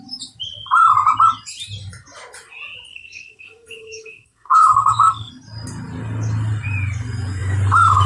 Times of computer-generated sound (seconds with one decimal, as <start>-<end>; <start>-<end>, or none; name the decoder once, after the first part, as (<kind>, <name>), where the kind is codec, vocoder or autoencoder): 2.9-5.3 (codec, SNAC)